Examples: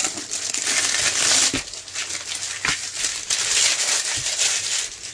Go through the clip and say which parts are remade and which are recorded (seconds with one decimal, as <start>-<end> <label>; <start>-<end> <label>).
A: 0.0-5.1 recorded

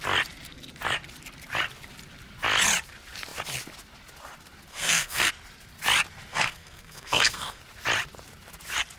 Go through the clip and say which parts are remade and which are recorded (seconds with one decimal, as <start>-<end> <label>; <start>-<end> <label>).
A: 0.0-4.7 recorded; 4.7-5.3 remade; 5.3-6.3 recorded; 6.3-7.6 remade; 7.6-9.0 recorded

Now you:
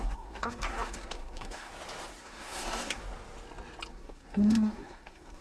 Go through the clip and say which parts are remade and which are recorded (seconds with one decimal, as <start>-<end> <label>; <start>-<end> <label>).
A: 0.0-1.7 remade; 1.7-2.2 recorded; 2.2-3.0 remade; 3.0-3.9 recorded; 3.9-5.4 remade

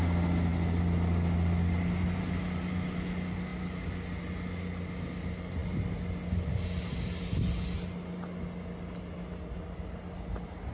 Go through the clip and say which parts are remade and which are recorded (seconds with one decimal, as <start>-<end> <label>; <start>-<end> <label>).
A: 0.0-10.7 recorded

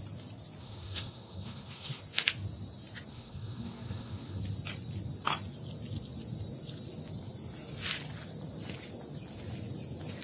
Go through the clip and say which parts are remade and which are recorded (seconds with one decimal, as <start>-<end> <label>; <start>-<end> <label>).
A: 0.0-0.6 recorded; 0.6-2.0 remade; 2.0-3.1 recorded; 3.1-4.4 remade; 4.4-10.2 recorded

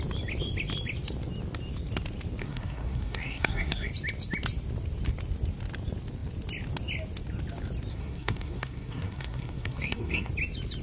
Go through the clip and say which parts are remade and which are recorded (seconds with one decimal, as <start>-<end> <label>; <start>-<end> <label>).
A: 0.0-2.4 recorded; 2.4-3.9 remade; 3.9-7.9 recorded; 7.9-10.3 remade; 10.3-10.8 recorded